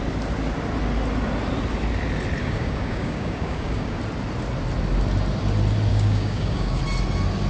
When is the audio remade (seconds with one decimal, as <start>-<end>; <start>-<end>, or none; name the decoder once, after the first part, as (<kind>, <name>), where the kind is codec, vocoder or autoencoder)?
2.4-4.0 (codec, DAC); 5.9-6.8